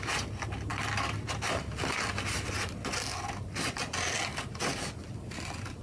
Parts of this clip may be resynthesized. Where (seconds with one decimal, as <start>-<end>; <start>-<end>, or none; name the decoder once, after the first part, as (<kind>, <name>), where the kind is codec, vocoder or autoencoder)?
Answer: none